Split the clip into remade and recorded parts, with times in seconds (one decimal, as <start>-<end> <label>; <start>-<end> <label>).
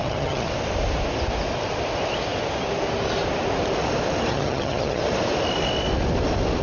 0.0-0.5 remade; 0.5-4.3 recorded; 4.3-5.0 remade; 5.0-6.6 recorded